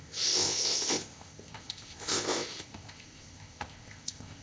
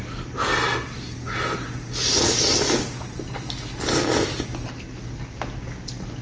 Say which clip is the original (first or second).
second